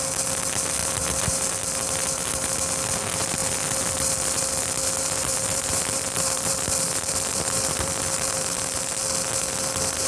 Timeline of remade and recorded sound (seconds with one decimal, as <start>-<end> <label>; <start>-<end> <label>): 0.0-0.8 recorded; 0.8-1.6 remade; 1.6-3.4 recorded; 3.4-4.4 remade; 4.4-5.3 recorded; 5.3-8.8 remade; 8.8-10.1 recorded